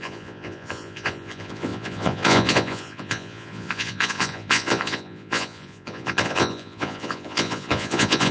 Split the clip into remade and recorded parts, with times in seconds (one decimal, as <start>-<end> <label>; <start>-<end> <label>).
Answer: 0.0-8.3 remade